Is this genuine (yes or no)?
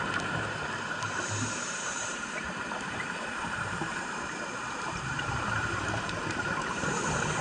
no